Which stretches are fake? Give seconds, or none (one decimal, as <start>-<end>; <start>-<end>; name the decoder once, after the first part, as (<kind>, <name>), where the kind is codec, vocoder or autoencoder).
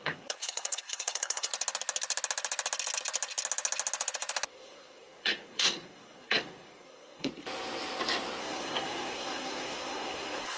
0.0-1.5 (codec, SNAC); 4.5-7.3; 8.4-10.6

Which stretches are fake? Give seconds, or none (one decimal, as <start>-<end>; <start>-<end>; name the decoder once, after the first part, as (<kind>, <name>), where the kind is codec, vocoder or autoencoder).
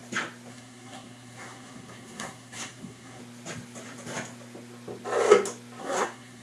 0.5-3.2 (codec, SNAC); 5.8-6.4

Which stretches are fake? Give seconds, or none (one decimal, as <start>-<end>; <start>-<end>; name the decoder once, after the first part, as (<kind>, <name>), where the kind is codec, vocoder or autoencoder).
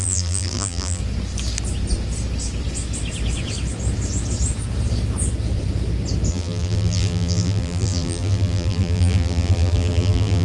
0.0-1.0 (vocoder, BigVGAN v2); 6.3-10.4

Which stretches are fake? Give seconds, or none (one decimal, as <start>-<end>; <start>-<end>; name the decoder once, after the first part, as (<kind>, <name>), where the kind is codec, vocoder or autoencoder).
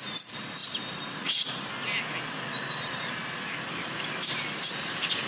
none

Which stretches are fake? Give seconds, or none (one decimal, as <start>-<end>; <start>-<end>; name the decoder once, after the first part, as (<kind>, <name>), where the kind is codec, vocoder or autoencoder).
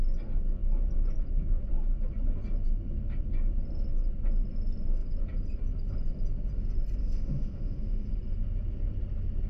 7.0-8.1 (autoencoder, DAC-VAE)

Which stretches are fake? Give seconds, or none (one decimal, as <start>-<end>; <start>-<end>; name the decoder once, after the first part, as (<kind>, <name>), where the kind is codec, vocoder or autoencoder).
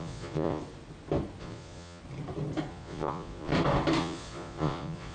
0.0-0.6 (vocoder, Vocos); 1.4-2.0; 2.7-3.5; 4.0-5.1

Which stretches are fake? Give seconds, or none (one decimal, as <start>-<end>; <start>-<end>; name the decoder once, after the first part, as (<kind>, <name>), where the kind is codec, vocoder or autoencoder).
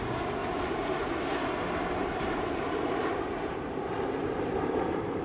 0.4-1.1 (vocoder, BigVGAN v2); 2.0-5.2